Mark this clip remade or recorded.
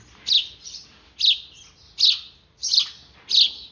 recorded